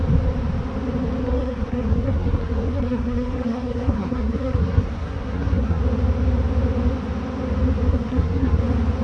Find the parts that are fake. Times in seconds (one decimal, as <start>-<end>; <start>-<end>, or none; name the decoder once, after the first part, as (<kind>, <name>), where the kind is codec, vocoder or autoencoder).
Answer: 1.2-5.8 (codec, SNAC); 7.9-8.6

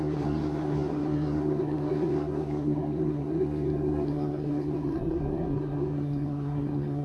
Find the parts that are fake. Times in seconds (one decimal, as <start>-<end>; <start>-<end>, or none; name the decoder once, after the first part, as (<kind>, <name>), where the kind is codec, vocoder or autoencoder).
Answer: 0.0-7.0 (codec, SNAC)